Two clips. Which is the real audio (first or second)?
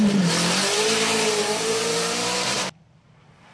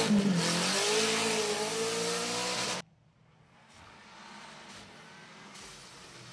second